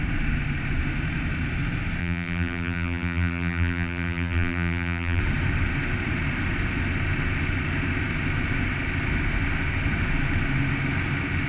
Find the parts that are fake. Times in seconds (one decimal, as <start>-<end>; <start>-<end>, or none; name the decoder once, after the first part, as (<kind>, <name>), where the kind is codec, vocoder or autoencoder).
2.0-5.2 (vocoder, BigVGAN v2)

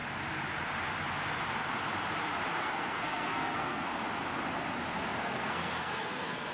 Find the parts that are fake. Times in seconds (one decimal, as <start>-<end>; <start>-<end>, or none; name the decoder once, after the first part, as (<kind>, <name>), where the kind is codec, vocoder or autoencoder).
2.6-3.9 (codec, SNAC); 5.2-6.5

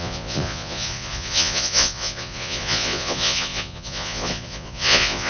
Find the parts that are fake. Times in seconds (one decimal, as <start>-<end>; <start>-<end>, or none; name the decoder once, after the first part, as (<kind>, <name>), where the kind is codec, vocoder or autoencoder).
0.0-5.3 (vocoder, Vocos)

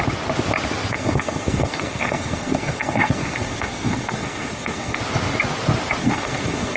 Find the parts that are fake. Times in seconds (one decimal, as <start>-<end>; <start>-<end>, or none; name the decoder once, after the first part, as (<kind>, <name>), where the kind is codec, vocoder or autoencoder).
0.9-5.0 (codec, SNAC); 6.0-6.8

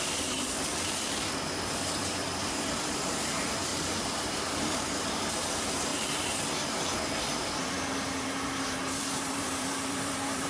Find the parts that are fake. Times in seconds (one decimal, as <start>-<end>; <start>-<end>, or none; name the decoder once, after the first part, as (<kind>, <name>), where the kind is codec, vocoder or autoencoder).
0.0-10.5 (vocoder, BigVGAN v2)